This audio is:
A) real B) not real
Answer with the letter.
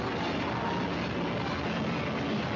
A